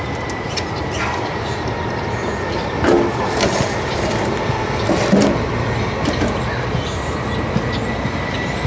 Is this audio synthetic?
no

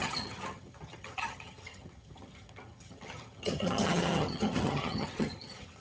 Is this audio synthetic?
yes